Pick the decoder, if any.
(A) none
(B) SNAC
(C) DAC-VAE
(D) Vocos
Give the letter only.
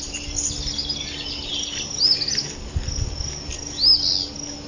A